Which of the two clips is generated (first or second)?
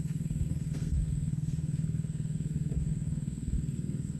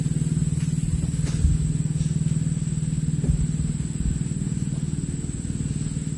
first